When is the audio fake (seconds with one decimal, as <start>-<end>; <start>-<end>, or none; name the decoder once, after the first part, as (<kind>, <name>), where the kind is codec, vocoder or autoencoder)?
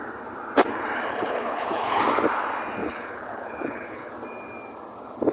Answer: 1.1-2.0 (codec, HILCodec); 2.8-4.1